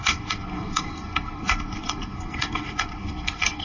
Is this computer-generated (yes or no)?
yes